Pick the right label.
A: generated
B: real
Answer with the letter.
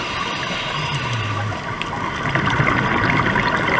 B